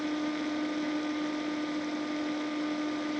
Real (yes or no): yes